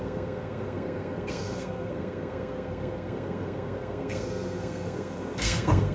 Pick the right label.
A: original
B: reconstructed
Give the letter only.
B